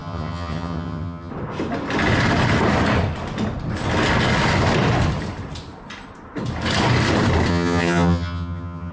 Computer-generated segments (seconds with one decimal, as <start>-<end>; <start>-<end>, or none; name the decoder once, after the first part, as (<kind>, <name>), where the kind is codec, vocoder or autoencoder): 0.0-1.3 (vocoder, HiFi-GAN); 7.5-8.9